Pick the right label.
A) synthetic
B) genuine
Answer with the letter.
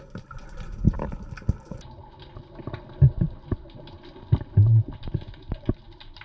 B